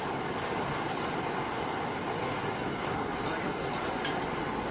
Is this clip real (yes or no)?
yes